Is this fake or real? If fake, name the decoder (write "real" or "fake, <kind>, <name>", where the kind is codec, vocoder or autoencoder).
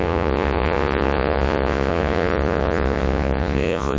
fake, vocoder, Vocos